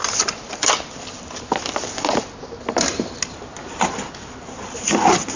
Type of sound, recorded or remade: recorded